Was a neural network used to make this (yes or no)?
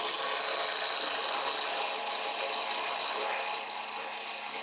no